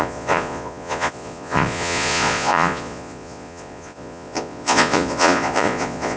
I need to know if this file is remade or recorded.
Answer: remade